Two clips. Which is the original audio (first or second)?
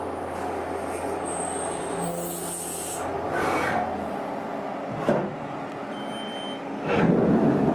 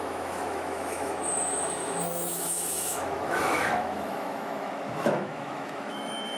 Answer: first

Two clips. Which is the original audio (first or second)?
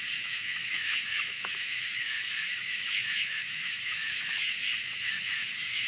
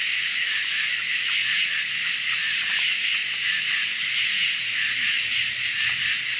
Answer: second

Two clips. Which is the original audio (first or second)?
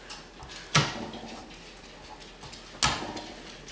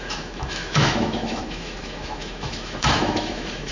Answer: first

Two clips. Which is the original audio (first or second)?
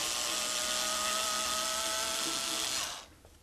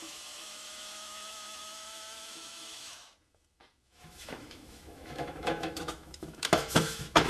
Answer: first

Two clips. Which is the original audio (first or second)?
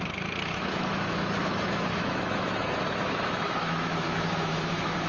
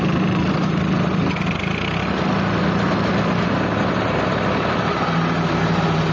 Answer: second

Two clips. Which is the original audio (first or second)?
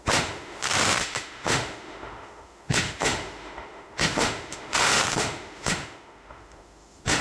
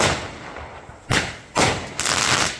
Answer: second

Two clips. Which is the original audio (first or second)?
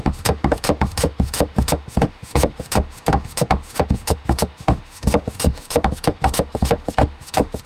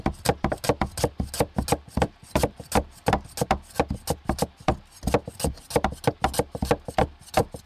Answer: second